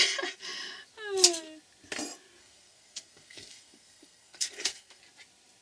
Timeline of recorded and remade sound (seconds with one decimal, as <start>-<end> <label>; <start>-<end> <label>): 0.0-2.4 recorded; 2.4-5.0 remade; 5.0-5.6 recorded